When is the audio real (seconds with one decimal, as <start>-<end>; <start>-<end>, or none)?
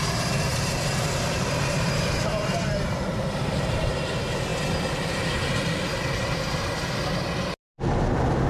0.0-0.5; 3.9-8.5